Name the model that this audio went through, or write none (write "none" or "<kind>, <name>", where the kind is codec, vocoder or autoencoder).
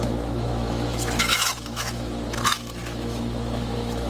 autoencoder, DAC-VAE